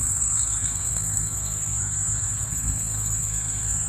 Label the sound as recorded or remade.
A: remade